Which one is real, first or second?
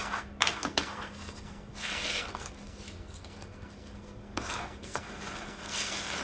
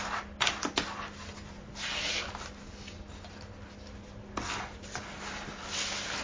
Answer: second